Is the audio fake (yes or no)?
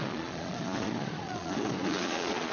yes